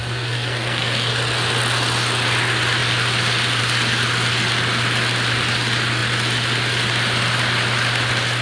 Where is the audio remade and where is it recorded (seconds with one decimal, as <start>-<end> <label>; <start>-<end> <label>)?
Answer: 0.0-1.1 remade; 1.1-8.4 recorded